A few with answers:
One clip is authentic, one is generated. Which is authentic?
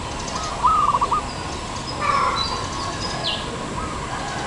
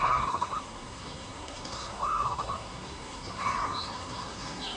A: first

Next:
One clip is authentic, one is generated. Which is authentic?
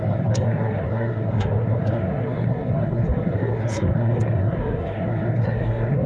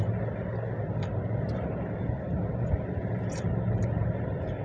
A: second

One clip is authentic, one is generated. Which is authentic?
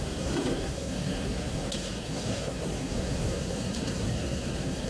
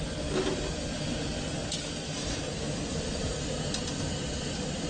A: second